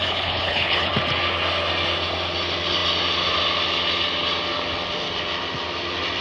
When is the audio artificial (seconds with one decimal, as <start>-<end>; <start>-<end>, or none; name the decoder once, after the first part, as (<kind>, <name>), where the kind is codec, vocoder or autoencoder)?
0.0-0.9 (codec, HILCodec)